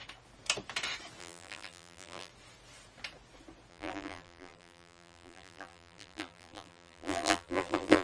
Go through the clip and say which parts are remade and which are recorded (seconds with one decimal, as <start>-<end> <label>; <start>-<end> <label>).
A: 0.0-1.2 recorded; 1.2-2.3 remade; 2.3-3.7 recorded; 3.7-8.0 remade